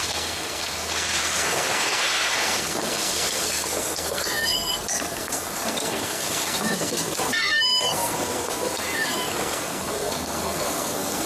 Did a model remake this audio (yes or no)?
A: yes